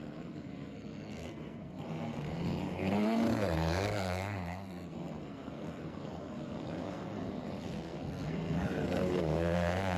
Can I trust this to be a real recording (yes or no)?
no